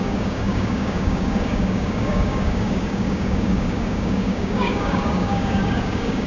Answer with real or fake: fake